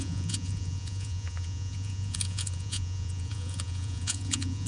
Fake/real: fake